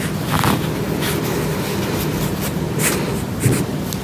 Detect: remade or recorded recorded